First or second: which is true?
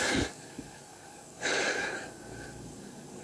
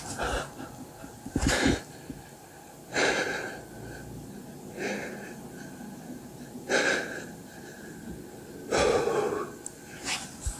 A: second